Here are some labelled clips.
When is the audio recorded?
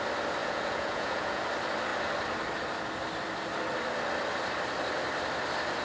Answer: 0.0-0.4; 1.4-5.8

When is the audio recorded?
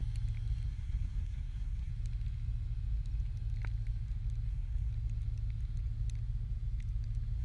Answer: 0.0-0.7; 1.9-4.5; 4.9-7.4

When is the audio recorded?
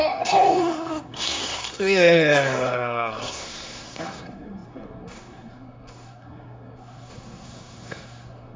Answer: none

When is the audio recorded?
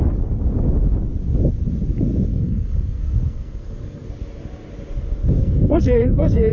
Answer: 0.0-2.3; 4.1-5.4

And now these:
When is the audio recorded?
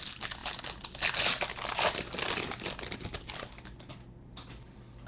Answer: 0.0-5.1